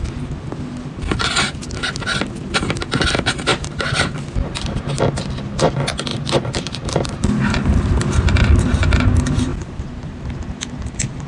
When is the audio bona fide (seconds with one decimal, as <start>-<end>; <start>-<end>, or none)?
0.0-3.5; 4.1-6.1; 7.4-11.3